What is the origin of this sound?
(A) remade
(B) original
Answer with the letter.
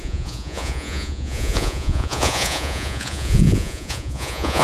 A